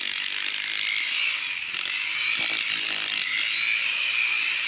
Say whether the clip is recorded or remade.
recorded